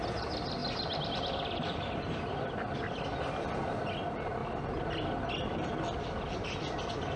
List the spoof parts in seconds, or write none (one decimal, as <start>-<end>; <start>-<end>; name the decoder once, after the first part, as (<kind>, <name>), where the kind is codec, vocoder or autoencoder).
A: none